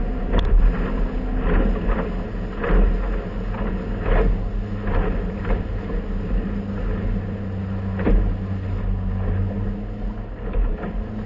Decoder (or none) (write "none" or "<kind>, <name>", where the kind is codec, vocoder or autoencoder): none